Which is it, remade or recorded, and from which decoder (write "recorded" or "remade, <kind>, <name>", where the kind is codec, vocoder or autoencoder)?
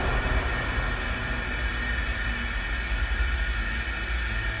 recorded